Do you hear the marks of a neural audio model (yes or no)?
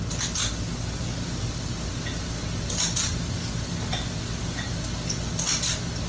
no